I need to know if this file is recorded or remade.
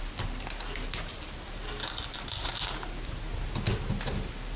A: recorded